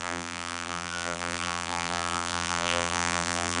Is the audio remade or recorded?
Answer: remade